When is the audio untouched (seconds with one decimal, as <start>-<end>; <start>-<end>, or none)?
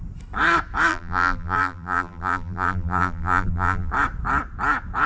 0.0-0.9; 3.9-5.1